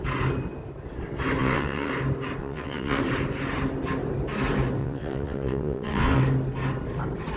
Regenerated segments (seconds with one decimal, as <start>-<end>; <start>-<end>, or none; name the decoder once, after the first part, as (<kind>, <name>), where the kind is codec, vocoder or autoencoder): 1.4-1.9 (vocoder, WaveNeXt); 2.4-3.0; 4.8-6.2